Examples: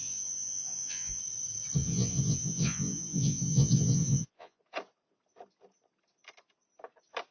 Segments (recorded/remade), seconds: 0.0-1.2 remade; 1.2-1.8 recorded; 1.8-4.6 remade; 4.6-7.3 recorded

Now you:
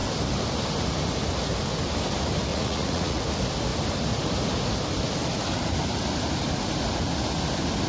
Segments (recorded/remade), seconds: 0.0-2.5 recorded; 2.5-3.2 remade; 3.2-7.9 recorded

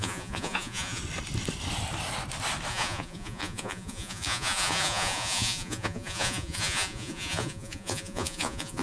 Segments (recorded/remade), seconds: 0.0-1.0 remade; 1.0-2.7 recorded; 2.7-8.8 remade

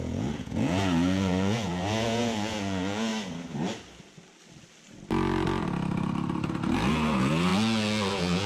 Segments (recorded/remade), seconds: 0.0-3.1 remade; 3.1-6.9 recorded; 6.9-7.5 remade; 7.5-8.1 recorded; 8.1-8.5 remade

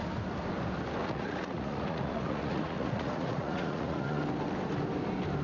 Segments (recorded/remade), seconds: 0.0-1.0 recorded; 1.0-4.2 remade; 4.2-5.4 recorded

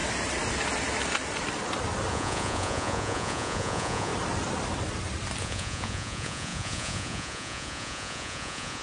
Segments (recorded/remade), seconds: 0.0-2.1 recorded; 2.1-4.1 remade; 4.1-5.4 recorded; 5.4-8.8 remade

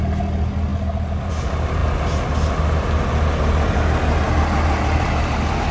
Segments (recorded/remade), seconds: 0.0-5.7 recorded

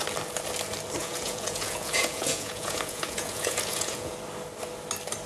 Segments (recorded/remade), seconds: 0.0-1.0 recorded; 1.0-4.2 remade; 4.2-5.3 recorded